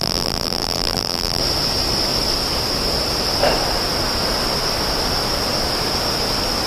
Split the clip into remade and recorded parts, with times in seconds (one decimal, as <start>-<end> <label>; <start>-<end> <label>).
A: 0.0-1.4 remade; 1.4-6.7 recorded